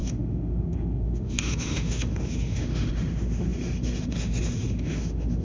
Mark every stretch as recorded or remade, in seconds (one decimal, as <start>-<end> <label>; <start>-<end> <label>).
0.0-5.4 remade

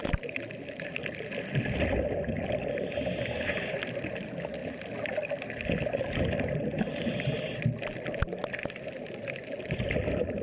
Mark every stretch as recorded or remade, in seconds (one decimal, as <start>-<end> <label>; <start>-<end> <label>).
0.0-10.4 recorded

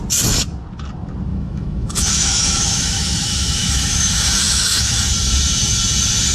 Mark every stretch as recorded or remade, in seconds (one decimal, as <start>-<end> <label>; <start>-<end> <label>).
0.0-1.3 recorded; 1.3-5.1 remade; 5.1-6.3 recorded

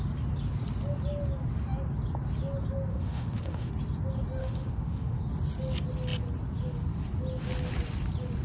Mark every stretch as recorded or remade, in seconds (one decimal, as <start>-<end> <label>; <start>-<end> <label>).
0.0-2.9 recorded; 2.9-3.7 remade; 3.7-4.4 recorded; 4.4-5.2 remade; 5.2-8.4 recorded

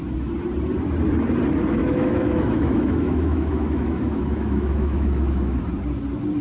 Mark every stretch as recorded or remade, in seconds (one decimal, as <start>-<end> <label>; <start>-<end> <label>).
0.0-1.8 recorded; 1.8-5.6 remade; 5.6-6.4 recorded